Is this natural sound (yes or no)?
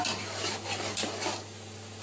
yes